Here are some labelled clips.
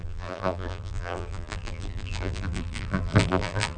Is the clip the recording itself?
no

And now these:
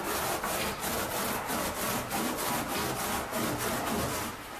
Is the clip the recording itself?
yes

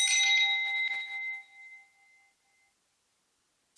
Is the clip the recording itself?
yes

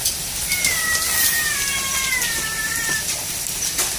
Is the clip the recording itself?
no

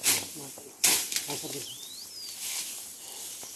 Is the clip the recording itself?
yes